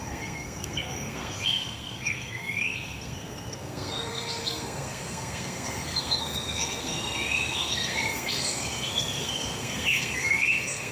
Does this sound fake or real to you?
fake